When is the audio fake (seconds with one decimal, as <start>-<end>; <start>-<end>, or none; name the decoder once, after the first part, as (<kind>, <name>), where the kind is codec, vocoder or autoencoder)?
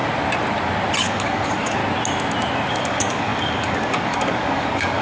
1.0-1.8 (codec, DAC); 2.7-5.0